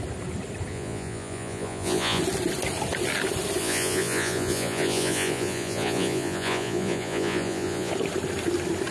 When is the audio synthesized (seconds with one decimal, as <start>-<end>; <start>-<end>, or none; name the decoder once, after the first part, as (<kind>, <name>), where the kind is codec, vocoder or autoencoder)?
0.7-2.2 (vocoder, Vocos); 3.6-7.9